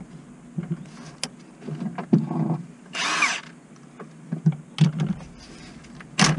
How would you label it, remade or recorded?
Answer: recorded